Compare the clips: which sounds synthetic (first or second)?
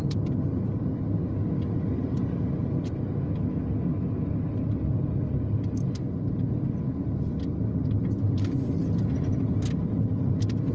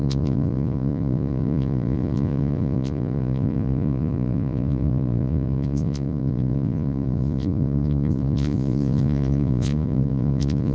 second